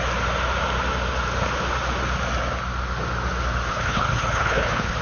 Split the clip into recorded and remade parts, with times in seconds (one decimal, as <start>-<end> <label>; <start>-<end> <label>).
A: 0.0-3.7 recorded; 3.7-5.0 remade

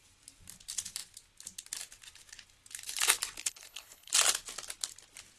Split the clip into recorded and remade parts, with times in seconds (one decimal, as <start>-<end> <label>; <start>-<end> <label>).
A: 0.0-3.4 recorded; 3.4-4.1 remade; 4.1-5.4 recorded

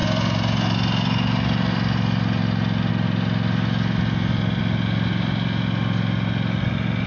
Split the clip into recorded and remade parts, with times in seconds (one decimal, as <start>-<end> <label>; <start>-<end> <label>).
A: 0.0-7.1 recorded